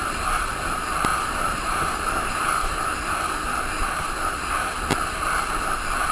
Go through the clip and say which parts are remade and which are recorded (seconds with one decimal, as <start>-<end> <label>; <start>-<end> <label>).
0.0-1.1 recorded; 1.1-2.7 remade; 2.7-3.8 recorded; 3.8-4.5 remade; 4.5-6.1 recorded